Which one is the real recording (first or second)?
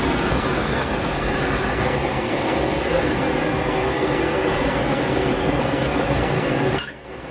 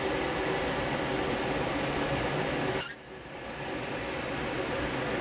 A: second